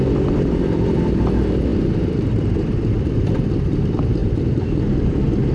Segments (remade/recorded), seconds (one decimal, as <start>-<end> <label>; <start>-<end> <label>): 0.0-5.5 remade